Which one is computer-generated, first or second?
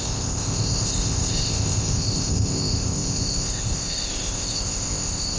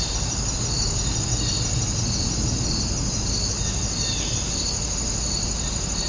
first